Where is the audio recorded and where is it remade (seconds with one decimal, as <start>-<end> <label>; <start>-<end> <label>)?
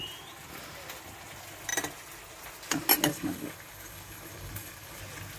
0.0-3.1 recorded; 3.1-5.0 remade; 5.0-5.4 recorded